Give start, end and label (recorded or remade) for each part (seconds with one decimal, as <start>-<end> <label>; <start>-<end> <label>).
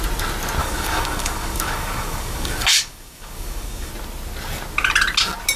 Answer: 0.0-0.6 recorded; 0.6-3.9 remade; 3.9-5.6 recorded